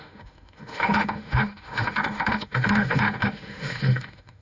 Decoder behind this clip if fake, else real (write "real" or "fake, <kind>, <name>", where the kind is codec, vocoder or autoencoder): fake, autoencoder, DAC-VAE